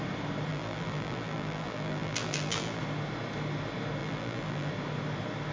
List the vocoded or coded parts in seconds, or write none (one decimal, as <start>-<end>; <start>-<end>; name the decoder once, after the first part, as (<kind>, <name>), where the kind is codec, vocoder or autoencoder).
0.5-2.8 (vocoder, BigVGAN v2); 4.0-4.7